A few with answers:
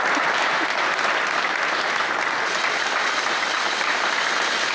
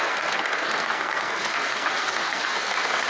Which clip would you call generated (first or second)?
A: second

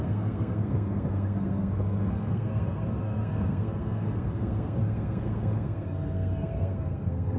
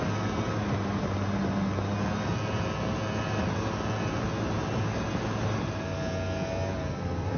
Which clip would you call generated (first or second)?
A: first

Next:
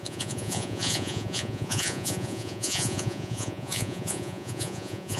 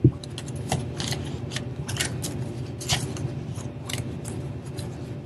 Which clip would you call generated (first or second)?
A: first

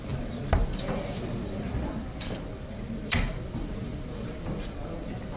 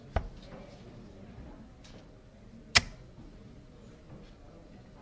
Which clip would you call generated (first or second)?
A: first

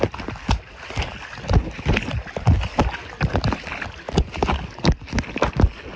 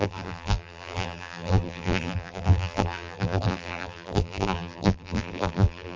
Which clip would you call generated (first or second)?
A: second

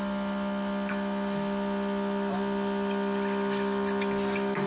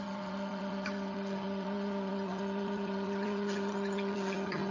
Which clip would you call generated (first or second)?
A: second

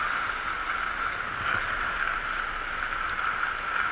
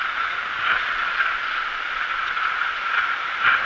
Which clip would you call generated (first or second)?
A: second